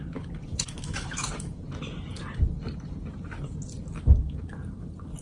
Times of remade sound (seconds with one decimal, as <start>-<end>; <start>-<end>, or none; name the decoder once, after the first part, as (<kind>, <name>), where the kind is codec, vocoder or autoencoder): 0.5-1.6 (autoencoder, DAC-VAE)

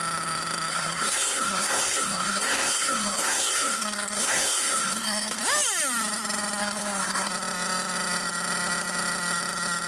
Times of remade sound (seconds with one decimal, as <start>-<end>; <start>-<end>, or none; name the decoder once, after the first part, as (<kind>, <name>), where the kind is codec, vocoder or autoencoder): 0.7-5.4 (codec, SNAC); 6.6-7.3

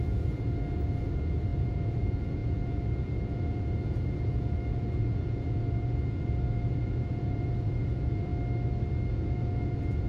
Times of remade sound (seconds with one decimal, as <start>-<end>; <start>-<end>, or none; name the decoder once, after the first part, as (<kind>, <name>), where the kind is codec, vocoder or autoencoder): 0.0-8.3 (vocoder, Vocos); 9.1-10.1

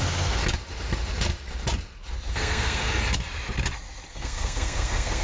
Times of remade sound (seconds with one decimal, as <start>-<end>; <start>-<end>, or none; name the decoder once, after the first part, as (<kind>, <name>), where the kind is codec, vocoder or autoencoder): 0.0-0.4 (codec, SNAC); 2.3-2.8; 4.1-5.2

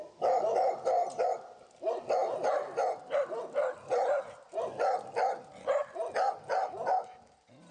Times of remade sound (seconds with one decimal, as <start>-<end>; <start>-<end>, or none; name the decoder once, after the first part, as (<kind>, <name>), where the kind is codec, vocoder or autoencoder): none

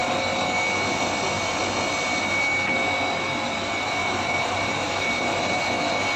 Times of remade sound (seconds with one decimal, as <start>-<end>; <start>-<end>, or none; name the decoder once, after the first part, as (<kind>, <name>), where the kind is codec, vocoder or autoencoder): 4.0-5.6 (vocoder, BigVGAN v2)

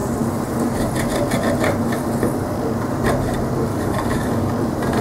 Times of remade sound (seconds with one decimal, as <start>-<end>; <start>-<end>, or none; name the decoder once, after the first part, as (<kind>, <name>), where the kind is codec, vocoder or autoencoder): 3.7-4.5 (codec, DAC)